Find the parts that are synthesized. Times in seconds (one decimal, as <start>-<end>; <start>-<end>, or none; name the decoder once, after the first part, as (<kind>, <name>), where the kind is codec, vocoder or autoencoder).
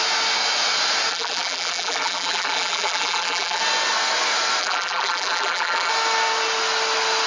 1.1-3.6 (vocoder, BigVGAN v2); 4.6-5.9